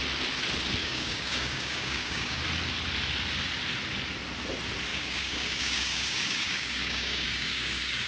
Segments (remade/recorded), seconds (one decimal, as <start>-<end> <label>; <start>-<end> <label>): 0.0-0.8 recorded; 0.8-2.4 remade; 2.4-4.9 recorded; 4.9-8.1 remade